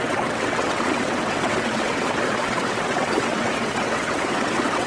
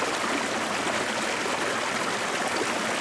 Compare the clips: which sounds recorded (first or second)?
second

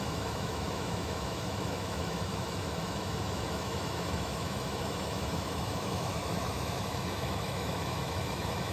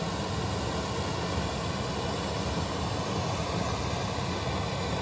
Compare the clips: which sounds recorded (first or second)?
second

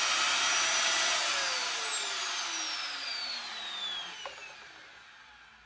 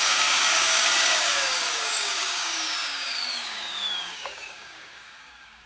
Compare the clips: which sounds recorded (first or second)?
first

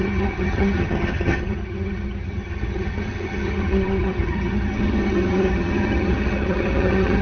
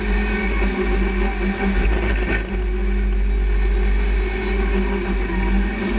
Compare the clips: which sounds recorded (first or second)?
second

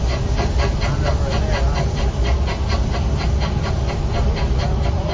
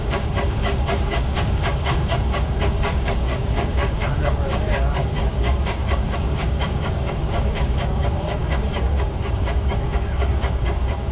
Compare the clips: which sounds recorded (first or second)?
first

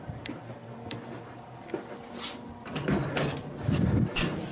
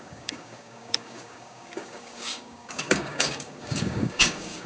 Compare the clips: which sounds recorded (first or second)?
first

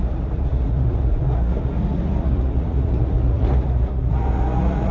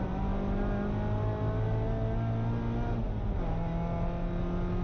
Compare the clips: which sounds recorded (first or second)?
second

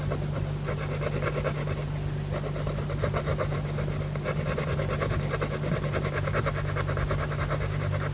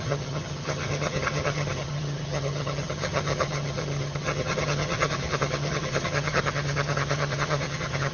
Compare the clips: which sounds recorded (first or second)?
first